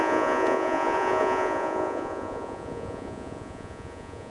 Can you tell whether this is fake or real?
fake